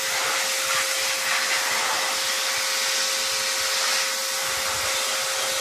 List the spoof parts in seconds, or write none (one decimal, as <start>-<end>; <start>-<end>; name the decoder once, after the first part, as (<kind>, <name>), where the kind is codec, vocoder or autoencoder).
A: none